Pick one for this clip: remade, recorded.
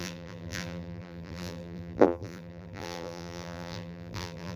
remade